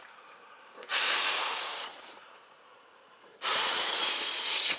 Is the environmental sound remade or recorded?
remade